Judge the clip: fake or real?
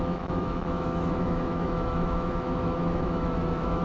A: fake